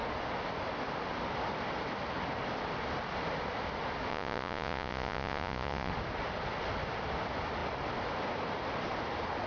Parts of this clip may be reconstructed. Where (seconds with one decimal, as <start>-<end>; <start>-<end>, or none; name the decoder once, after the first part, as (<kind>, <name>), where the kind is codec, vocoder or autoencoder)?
4.1-5.9 (vocoder, Vocos)